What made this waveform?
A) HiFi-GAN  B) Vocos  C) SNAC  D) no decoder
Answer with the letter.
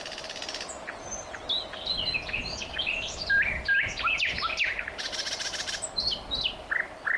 D